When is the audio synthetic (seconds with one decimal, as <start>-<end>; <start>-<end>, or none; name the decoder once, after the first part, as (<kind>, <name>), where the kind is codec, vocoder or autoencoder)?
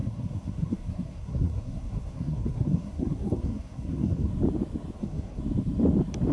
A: 0.0-4.3 (codec, SNAC); 5.0-5.4